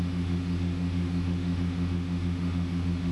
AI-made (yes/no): yes